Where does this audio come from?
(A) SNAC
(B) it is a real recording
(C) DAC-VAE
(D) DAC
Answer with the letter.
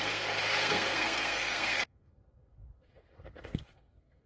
A